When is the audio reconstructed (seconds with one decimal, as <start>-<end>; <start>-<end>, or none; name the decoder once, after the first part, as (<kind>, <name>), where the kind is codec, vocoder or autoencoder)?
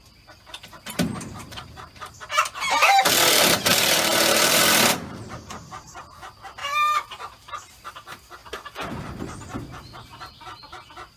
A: 1.1-6.0 (vocoder, BigVGAN v2); 6.6-7.9